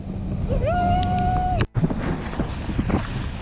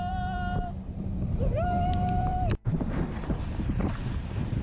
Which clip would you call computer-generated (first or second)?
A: second